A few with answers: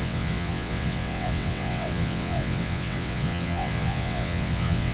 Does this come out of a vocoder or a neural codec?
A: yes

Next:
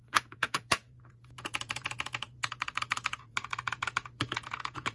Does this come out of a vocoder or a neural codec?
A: yes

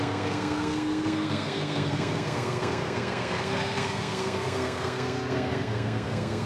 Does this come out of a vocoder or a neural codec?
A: yes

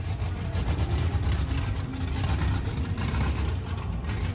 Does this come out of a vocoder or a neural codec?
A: no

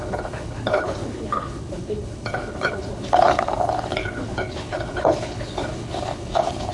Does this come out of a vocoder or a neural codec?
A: yes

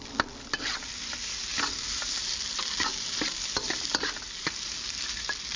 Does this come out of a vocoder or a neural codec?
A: no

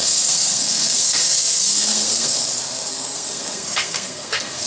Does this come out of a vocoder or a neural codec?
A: yes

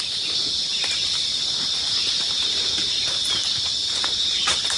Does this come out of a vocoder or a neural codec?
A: no